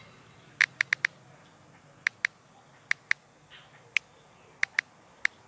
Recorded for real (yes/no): yes